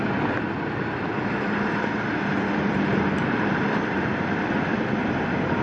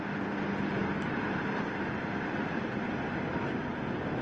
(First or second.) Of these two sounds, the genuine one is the second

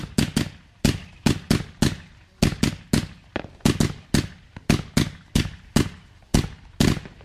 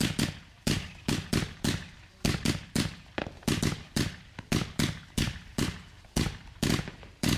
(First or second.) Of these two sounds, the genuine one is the first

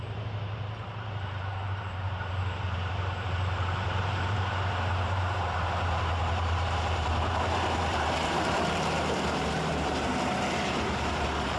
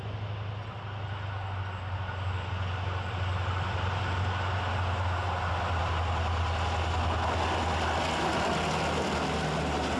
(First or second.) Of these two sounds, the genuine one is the second